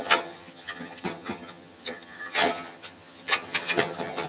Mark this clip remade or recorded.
remade